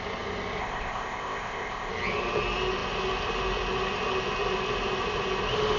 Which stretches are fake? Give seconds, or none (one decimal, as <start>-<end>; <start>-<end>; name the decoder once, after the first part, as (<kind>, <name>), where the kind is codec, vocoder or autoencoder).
0.6-1.9 (codec, ZipCodec)